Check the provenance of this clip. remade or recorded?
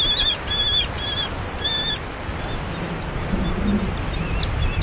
recorded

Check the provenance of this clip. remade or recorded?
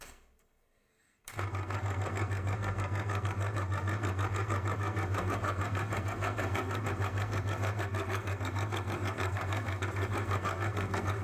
remade